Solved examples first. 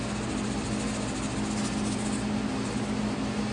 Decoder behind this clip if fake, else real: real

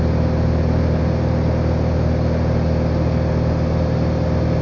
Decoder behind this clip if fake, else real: real